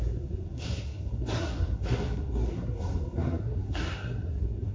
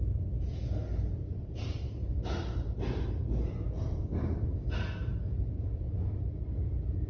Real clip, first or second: second